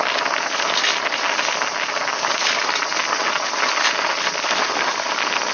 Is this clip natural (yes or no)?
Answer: yes